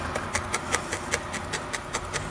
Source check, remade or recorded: recorded